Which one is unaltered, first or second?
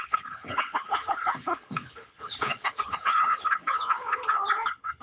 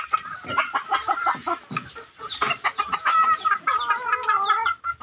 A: second